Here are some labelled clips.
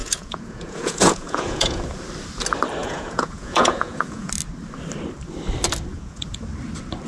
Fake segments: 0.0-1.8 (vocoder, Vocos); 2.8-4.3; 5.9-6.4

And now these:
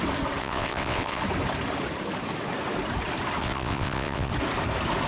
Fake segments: 0.4-1.2 (vocoder, WaveNeXt); 3.4-4.3